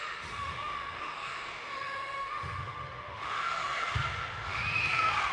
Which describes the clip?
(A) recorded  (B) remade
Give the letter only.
B